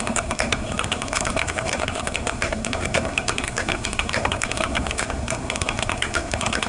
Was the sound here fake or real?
fake